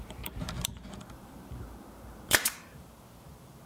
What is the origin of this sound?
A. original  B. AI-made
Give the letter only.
B